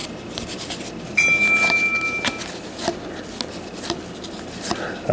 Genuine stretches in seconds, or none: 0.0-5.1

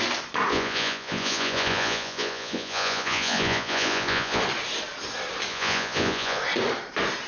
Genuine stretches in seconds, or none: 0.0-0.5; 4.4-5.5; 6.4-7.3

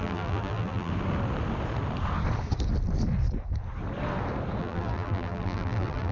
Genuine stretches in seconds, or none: 0.9-4.6